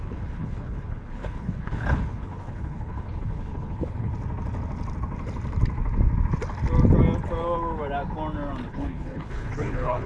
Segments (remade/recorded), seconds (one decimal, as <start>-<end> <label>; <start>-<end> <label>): 0.0-4.1 remade; 4.1-8.7 recorded; 8.7-10.1 remade